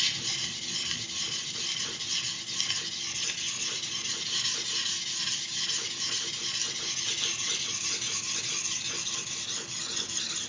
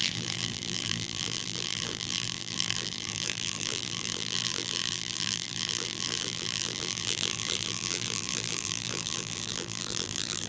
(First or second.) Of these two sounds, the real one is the first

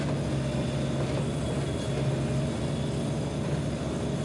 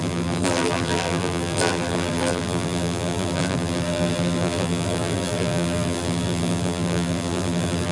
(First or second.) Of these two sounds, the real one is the first